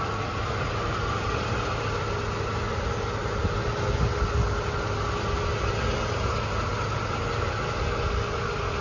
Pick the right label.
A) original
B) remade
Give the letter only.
A